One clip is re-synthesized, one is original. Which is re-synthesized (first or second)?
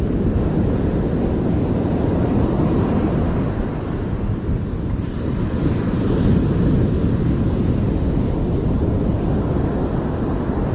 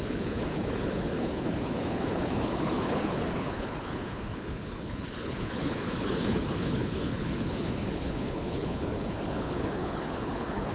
second